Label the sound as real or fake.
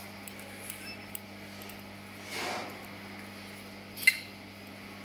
real